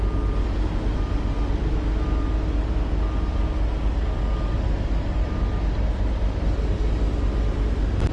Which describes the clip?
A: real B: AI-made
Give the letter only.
A